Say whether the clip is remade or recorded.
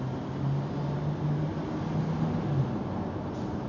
recorded